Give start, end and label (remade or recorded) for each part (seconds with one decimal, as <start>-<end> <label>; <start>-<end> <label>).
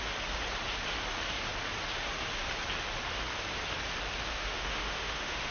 0.0-4.3 recorded; 4.3-5.5 remade